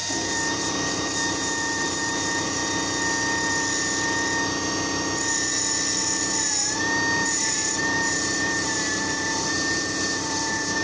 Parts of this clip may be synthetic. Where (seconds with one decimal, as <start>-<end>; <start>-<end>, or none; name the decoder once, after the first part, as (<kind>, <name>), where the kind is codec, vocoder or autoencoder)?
0.6-2.6 (vocoder, BigVGAN v2); 6.6-10.8